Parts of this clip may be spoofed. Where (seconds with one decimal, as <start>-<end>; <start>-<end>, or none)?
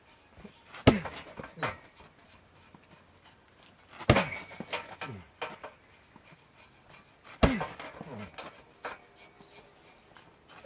none